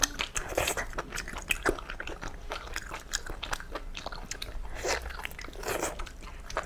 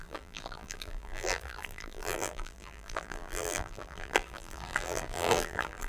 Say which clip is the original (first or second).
first